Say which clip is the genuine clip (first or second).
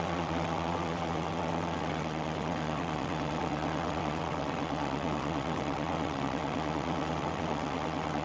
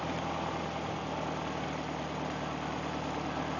second